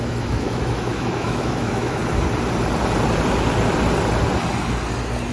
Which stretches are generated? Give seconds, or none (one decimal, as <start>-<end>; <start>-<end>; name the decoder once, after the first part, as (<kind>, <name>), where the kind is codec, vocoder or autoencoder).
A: 0.0-2.0 (autoencoder, DAC-VAE)